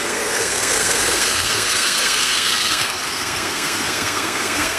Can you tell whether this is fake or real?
fake